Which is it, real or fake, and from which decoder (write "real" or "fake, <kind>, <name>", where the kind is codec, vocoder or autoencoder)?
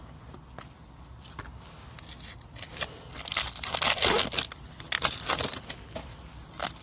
real